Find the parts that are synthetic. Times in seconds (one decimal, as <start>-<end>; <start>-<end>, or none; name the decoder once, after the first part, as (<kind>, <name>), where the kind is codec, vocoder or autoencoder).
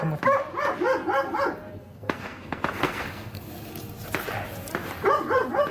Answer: 1.7-3.5 (codec, SNAC)